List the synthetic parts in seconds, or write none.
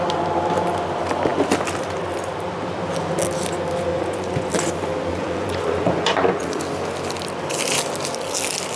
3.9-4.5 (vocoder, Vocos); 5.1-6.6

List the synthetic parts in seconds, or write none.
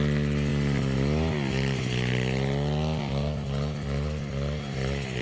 none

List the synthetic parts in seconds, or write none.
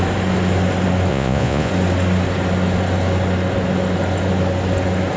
1.1-1.7 (vocoder, Vocos)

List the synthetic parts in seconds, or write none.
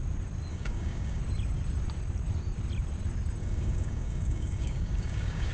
0.5-1.2 (codec, DAC); 3.4-5.5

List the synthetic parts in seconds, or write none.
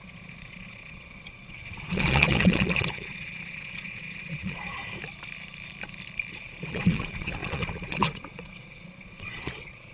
0.0-4.8 (vocoder, Vocos); 6.3-9.9